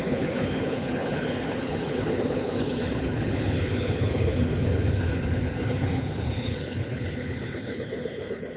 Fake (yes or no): yes